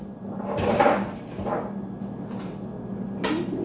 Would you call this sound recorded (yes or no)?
yes